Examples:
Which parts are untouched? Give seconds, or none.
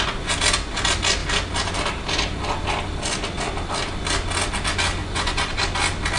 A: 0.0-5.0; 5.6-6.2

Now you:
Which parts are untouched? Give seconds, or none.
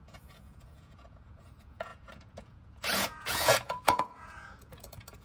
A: none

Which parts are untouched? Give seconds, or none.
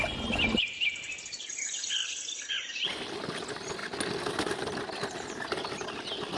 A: 0.0-6.4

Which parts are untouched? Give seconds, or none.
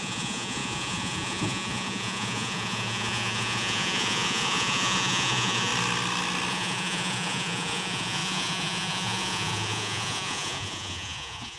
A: 5.7-6.5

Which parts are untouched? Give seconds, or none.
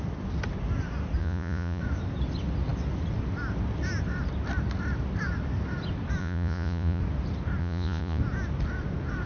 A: 0.0-1.2; 1.8-6.2; 7.0-7.6; 8.2-9.3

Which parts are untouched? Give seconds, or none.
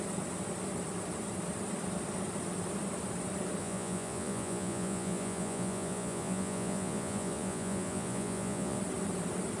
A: 0.0-3.6; 8.8-9.6